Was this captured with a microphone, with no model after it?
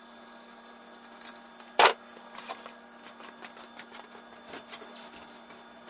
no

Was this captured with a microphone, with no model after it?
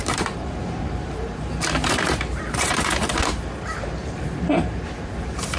no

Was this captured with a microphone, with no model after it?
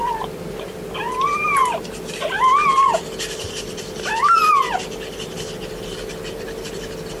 yes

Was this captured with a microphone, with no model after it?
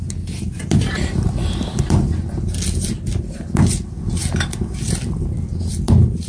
yes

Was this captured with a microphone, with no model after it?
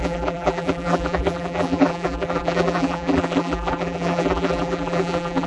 no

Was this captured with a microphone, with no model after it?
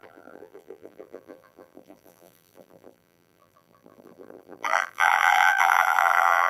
no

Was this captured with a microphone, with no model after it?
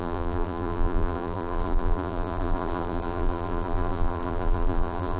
no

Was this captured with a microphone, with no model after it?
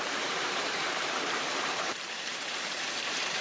no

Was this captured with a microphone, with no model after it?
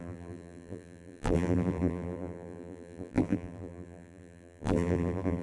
no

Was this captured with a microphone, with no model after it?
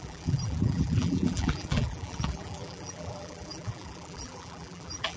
no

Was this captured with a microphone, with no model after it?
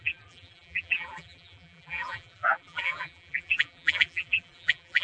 no